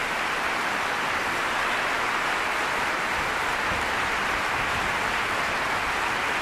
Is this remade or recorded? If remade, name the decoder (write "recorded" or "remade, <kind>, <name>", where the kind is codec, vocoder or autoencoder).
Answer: recorded